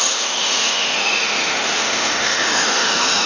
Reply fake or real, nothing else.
fake